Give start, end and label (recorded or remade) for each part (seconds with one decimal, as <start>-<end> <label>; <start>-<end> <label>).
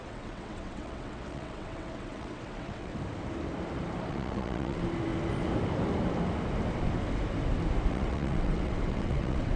0.0-2.9 remade; 2.9-4.1 recorded; 4.1-4.8 remade; 4.8-7.9 recorded; 7.9-9.6 remade